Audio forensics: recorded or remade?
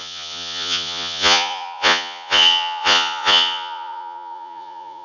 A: remade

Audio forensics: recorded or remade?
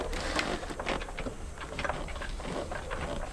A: recorded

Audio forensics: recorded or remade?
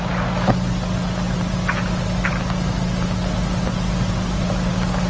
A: recorded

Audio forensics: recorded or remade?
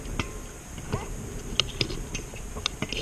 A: recorded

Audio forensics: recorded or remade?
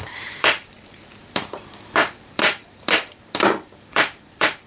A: remade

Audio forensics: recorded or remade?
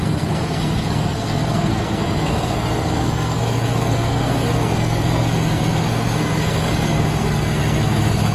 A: remade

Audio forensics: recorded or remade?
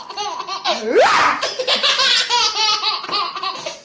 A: remade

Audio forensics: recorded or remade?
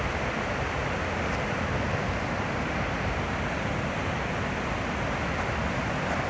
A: recorded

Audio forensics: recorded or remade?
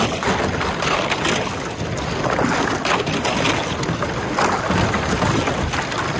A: recorded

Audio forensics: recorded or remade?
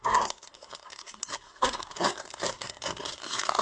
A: remade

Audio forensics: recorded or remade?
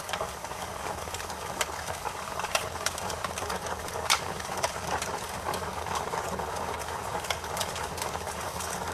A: remade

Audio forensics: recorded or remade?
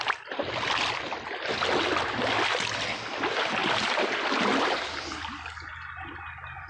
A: recorded